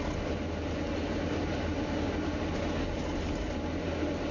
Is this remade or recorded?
recorded